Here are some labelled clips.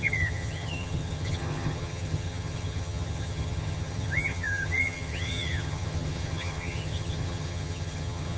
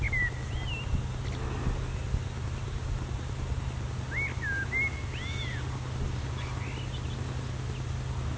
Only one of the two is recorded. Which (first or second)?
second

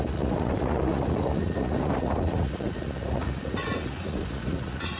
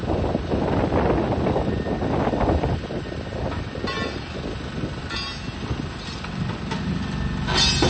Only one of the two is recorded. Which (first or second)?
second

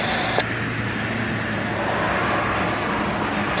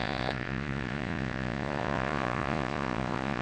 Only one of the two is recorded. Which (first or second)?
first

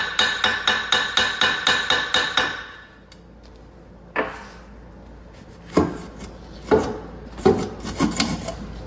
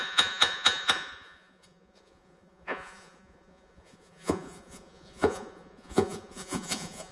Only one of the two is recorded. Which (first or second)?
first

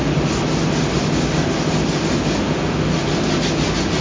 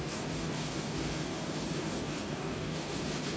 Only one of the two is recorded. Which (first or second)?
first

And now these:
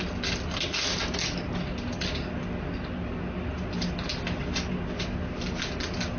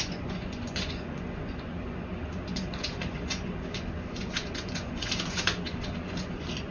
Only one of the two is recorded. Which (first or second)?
first